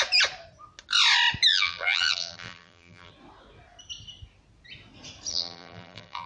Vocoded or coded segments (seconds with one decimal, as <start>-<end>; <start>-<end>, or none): 1.5-3.1; 5.3-6.3